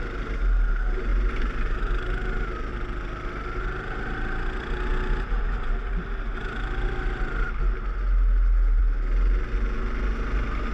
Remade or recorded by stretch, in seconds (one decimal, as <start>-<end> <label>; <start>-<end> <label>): 0.0-10.7 recorded